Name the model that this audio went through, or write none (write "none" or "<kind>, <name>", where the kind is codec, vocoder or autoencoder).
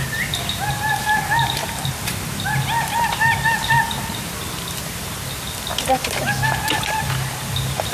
none